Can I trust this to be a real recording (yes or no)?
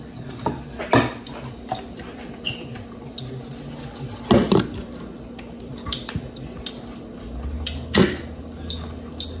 yes